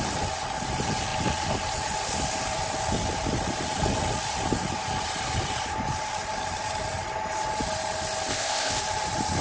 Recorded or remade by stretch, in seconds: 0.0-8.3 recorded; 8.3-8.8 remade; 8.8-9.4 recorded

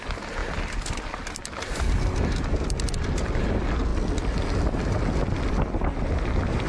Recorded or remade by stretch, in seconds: 0.0-6.7 recorded

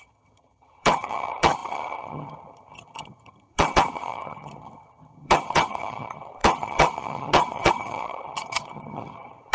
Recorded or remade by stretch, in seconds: 0.0-9.5 remade

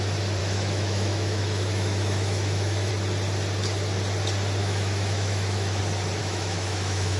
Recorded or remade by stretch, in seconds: 0.0-0.4 recorded; 0.4-2.9 remade; 2.9-4.6 recorded; 4.6-5.8 remade; 5.8-6.2 recorded; 6.2-7.2 remade

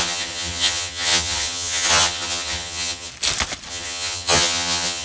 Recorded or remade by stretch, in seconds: 0.0-3.1 remade; 3.1-3.7 recorded; 3.7-5.0 remade

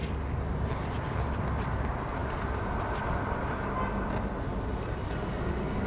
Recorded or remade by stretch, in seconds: 0.0-5.9 recorded